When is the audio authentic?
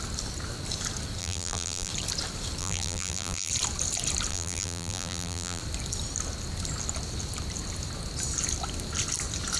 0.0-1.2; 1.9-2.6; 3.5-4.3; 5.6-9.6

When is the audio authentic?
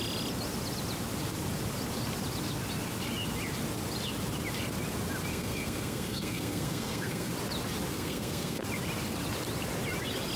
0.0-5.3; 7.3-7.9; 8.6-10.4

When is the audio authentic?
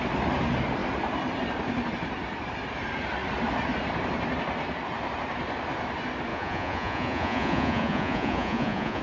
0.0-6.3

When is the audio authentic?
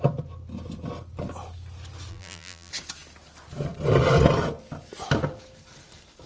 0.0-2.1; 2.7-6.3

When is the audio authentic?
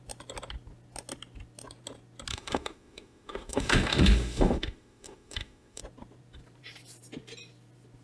0.0-2.3; 5.8-8.0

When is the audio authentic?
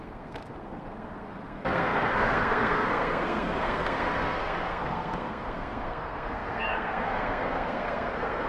none